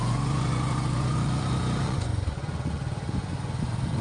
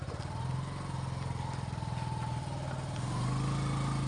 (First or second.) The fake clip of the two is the first